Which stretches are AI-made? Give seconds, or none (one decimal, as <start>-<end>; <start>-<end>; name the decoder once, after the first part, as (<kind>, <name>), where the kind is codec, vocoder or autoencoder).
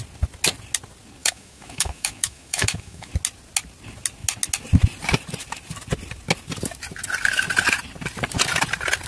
1.2-3.1 (autoencoder, DAC-VAE)